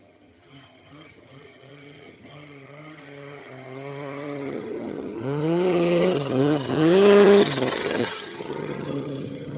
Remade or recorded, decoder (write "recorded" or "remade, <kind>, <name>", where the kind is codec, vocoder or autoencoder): remade, vocoder, HiFi-GAN